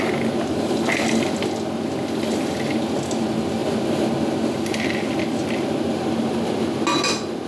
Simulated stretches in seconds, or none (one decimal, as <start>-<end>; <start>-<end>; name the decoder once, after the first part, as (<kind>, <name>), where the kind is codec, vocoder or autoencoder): none

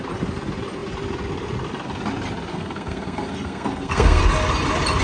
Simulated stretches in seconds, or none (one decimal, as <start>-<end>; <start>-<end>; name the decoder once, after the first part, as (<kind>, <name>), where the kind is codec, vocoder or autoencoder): 2.5-4.2 (codec, SNAC)